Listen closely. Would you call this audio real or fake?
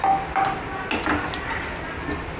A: real